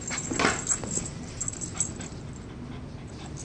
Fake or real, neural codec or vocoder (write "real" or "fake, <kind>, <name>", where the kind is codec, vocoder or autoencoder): real